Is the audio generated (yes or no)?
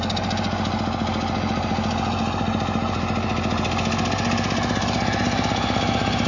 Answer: no